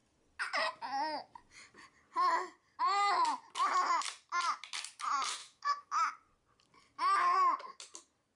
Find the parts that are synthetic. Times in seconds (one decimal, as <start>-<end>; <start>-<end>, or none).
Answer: 5.4-6.0